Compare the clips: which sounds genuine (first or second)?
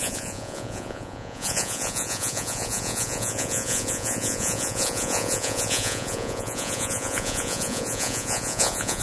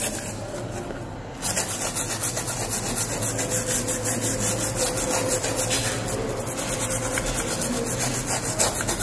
second